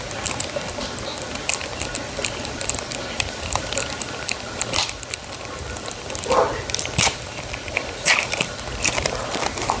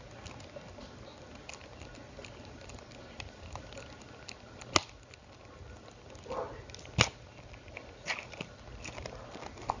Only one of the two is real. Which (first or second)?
second